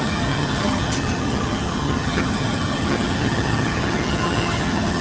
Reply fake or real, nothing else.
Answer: fake